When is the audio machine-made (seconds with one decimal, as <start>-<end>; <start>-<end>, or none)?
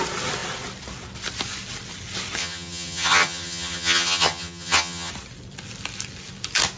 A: 2.4-5.1